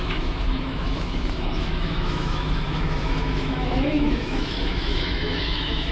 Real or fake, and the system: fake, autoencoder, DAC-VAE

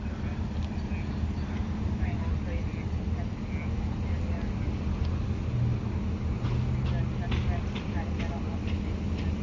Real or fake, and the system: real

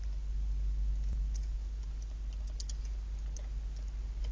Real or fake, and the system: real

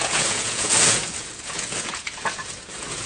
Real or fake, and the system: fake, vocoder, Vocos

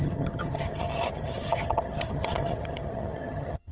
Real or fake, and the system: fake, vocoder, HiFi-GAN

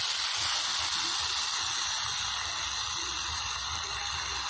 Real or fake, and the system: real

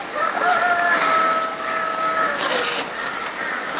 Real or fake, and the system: real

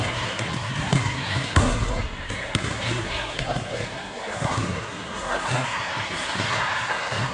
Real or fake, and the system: fake, codec, SNAC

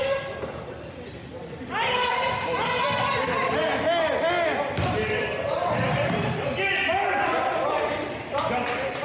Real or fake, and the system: real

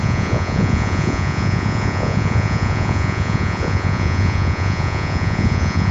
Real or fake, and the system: fake, vocoder, Vocos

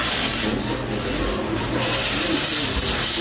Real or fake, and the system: real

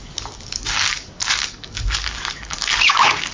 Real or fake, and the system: fake, codec, DAC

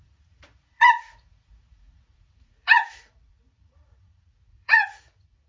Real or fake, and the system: fake, vocoder, Vocos